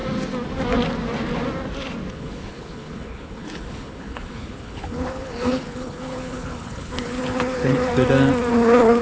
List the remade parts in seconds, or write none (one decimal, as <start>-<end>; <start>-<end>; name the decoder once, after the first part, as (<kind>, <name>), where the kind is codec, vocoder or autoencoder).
2.1-7.9 (codec, HILCodec); 8.5-9.0

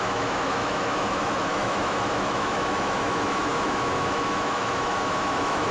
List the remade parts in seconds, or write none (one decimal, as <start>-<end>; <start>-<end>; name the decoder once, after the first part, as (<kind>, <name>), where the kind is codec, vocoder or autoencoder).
0.0-5.7 (autoencoder, DAC-VAE)

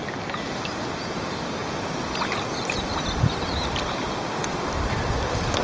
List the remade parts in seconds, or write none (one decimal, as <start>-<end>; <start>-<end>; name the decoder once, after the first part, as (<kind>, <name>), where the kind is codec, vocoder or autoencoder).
none

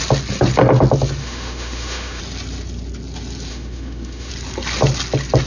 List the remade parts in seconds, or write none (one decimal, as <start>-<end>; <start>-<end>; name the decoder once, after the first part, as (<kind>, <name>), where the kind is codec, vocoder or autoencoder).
1.2-2.2 (autoencoder, DAC-VAE); 3.5-4.3